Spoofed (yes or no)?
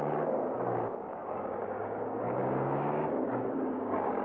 yes